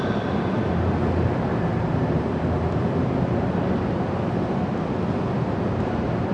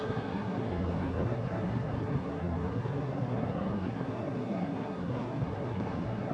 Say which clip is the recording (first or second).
first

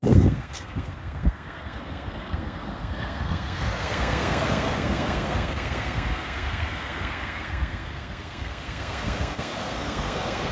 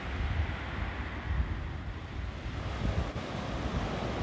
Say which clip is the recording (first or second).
second